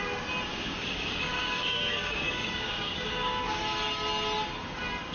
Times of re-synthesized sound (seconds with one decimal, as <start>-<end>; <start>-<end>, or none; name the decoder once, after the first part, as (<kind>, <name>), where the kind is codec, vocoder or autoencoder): 0.5-3.6 (codec, DAC)